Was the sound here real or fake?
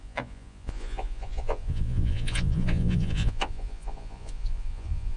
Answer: fake